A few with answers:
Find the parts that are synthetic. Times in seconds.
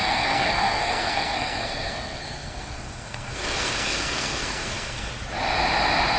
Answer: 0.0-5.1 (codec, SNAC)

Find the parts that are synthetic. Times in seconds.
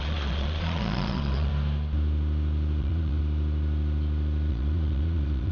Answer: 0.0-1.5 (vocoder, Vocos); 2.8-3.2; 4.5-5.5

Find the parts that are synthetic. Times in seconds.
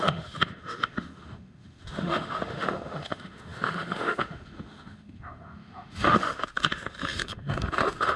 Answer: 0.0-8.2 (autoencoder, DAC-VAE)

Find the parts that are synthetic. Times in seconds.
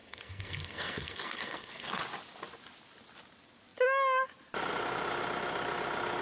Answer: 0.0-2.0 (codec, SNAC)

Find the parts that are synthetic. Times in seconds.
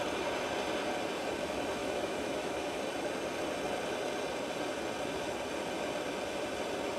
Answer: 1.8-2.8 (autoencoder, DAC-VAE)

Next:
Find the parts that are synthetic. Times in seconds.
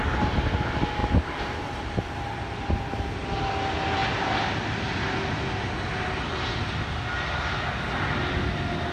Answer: none